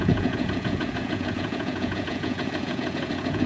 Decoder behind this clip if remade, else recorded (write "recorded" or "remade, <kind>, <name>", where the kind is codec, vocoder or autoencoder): remade, vocoder, Vocos